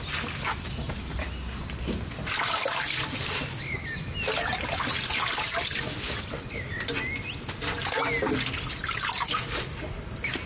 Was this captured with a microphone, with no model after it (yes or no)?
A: yes